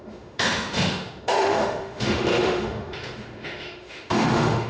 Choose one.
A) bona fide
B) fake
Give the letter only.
B